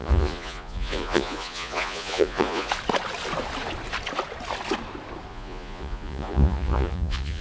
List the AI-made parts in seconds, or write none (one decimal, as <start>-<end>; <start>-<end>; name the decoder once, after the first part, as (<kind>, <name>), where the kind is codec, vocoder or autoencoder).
0.0-2.7 (vocoder, Vocos); 5.3-7.4